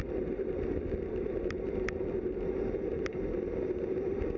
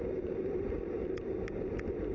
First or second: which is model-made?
second